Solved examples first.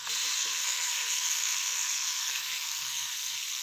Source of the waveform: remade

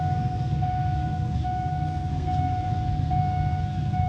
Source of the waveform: remade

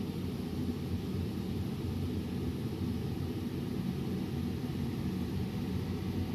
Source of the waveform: recorded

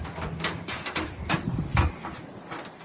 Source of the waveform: remade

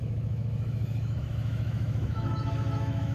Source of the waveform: remade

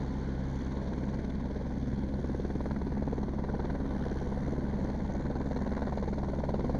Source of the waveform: recorded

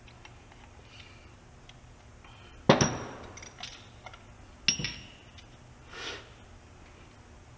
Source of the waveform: recorded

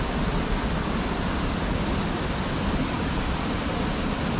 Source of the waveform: remade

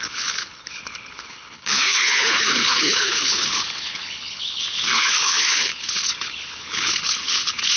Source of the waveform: remade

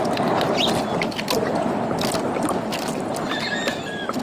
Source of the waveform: recorded